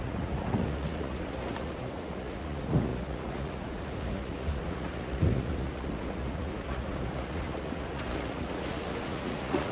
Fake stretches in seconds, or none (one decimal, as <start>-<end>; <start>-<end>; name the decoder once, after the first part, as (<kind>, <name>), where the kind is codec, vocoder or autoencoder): 0.0-9.7 (vocoder, Vocos)